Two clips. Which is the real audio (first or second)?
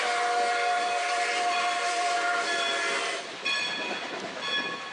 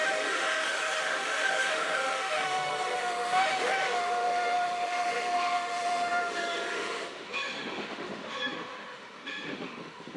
first